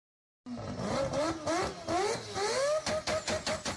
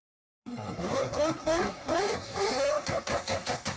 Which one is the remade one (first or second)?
second